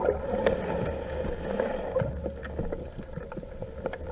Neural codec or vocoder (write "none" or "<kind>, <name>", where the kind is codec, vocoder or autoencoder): none